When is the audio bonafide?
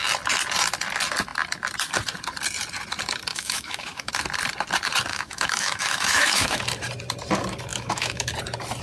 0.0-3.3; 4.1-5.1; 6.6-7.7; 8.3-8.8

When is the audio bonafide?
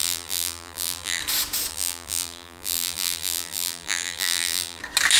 1.2-1.7; 4.8-5.2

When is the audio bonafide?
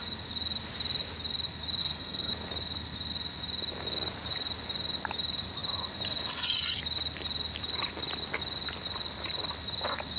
0.0-1.8; 2.3-10.2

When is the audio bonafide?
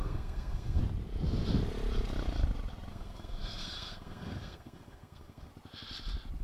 0.8-2.9; 5.5-6.4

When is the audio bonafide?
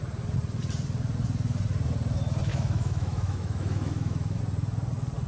0.0-2.5; 4.4-5.3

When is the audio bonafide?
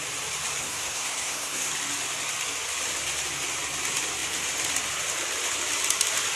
0.0-0.6; 1.7-6.4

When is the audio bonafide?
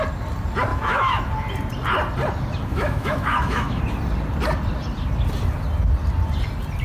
0.0-0.7; 1.2-2.7; 3.8-6.8